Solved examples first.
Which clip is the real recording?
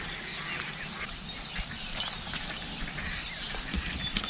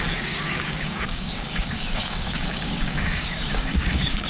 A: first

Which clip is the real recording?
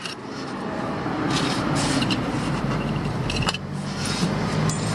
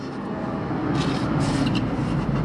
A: second